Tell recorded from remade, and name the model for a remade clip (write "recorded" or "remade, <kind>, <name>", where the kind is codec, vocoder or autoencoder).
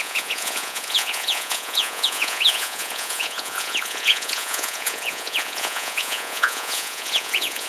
remade, vocoder, Vocos